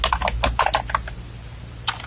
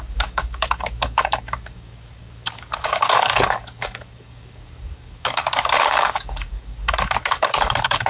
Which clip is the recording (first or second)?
first